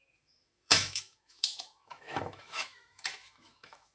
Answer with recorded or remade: remade